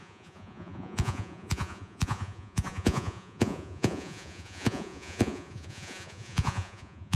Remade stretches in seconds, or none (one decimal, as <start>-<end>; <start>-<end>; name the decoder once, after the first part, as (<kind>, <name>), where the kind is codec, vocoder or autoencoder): 0.0-7.2 (vocoder, Vocos)